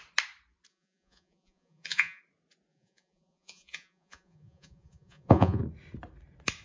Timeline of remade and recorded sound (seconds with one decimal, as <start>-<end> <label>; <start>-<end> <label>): 0.0-0.7 recorded; 0.7-2.2 remade; 2.2-2.7 recorded; 2.7-5.6 remade; 5.6-6.6 recorded